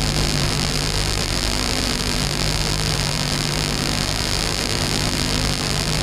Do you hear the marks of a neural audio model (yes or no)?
yes